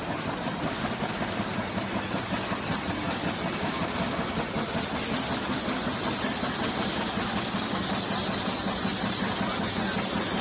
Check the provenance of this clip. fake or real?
real